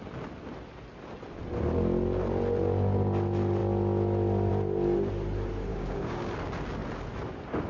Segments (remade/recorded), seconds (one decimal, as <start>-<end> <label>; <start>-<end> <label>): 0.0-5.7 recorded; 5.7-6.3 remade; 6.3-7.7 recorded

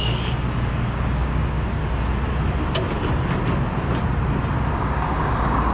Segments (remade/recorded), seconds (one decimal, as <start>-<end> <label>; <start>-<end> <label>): 0.0-1.8 remade; 1.8-4.7 recorded; 4.7-5.7 remade

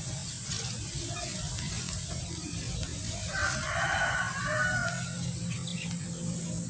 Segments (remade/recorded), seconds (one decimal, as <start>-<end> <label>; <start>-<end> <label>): 0.0-6.7 recorded